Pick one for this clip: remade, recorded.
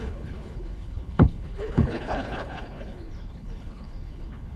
remade